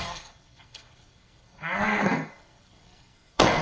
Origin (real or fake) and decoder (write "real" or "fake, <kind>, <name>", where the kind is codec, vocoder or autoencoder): fake, codec, SNAC